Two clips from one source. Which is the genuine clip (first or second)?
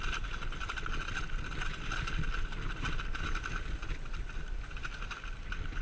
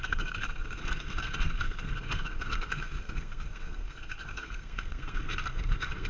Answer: first